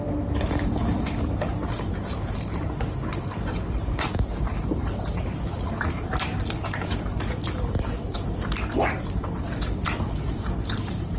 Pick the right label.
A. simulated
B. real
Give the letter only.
A